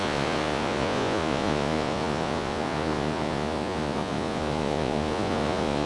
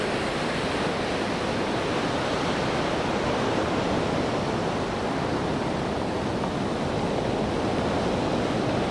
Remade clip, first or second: first